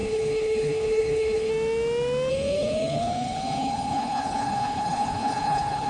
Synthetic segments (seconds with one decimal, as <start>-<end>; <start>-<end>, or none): 0.0-1.5; 2.3-5.9